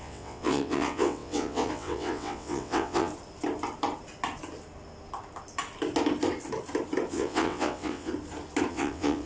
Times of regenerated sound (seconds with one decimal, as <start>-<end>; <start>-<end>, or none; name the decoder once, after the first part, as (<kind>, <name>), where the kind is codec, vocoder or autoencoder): 0.0-3.1 (vocoder, WaveNeXt); 7.1-8.1; 8.7-9.3

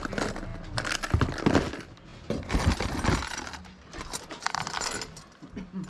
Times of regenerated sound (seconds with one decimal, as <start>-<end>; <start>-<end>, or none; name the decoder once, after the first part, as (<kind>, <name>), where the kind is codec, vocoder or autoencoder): none

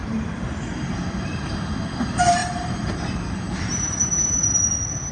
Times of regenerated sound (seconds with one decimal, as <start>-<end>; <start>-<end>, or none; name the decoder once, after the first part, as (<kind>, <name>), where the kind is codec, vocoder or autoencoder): 0.0-0.9 (vocoder, BigVGAN v2); 2.4-4.6

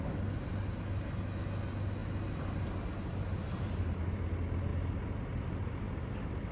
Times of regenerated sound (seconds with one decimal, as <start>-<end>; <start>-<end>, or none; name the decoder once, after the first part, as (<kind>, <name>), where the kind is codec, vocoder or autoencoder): none

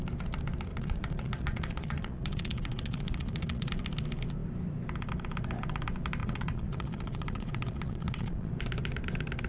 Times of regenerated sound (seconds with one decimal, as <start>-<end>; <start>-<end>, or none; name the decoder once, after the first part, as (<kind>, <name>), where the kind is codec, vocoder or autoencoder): 0.7-3.7 (vocoder, Vocos); 6.2-8.5